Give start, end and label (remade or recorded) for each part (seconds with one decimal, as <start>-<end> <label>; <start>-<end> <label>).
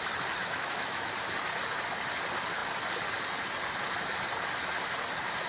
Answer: 0.0-0.4 recorded; 0.4-1.1 remade; 1.1-5.5 recorded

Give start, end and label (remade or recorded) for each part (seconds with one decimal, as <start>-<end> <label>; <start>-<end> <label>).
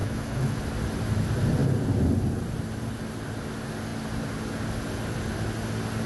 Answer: 0.0-0.6 remade; 0.6-6.1 recorded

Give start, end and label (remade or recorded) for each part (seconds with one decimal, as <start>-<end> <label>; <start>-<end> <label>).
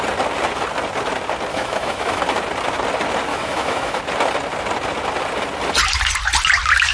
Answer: 0.0-1.5 recorded; 1.5-2.2 remade; 2.2-3.3 recorded; 3.3-4.0 remade; 4.0-6.9 recorded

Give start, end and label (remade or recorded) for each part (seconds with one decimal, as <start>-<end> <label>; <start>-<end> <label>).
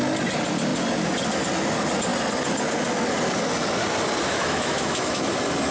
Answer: 0.0-4.3 recorded; 4.3-5.3 remade; 5.3-5.7 recorded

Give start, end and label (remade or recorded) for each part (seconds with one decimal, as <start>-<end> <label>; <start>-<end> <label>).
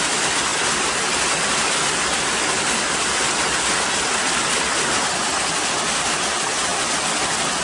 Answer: 0.0-7.6 recorded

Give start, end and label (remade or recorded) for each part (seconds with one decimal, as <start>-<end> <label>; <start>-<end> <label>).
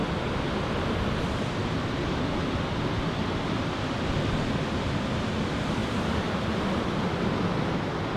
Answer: 0.0-8.2 recorded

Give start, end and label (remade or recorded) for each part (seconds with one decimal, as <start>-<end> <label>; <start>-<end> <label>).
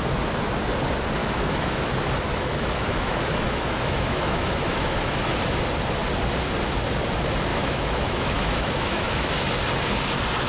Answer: 0.0-1.2 recorded; 1.2-1.9 remade; 1.9-2.3 recorded; 2.3-5.3 remade; 5.3-7.5 recorded; 7.5-9.3 remade; 9.3-10.5 recorded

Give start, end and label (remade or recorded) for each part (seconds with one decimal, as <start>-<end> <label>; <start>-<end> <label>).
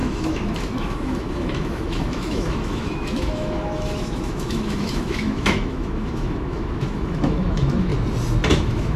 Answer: 0.0-7.9 remade; 7.9-8.5 recorded; 8.5-9.0 remade